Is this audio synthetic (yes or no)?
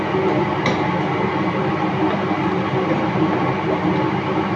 no